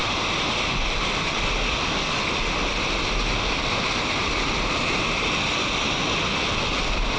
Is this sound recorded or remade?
recorded